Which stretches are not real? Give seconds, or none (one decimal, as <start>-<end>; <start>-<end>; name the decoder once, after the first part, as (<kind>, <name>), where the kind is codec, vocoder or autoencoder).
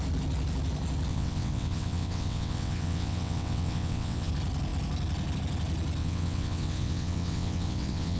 1.1-4.3 (vocoder, WaveNeXt); 6.0-8.2